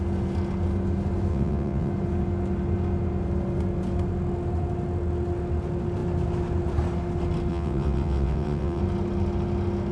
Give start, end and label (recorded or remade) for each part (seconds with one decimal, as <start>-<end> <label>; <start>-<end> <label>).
0.0-1.3 recorded; 1.3-1.9 remade; 1.9-7.5 recorded; 7.5-8.8 remade; 8.8-9.9 recorded